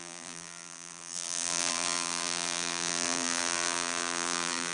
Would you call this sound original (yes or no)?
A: no